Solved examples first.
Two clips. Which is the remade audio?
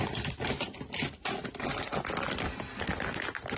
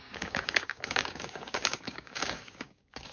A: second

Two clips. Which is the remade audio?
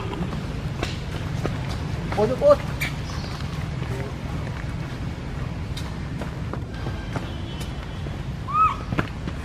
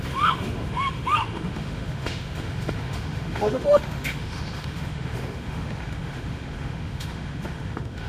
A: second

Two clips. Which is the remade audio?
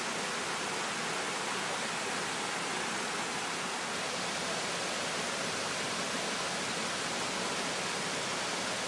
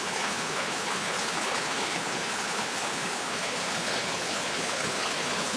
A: second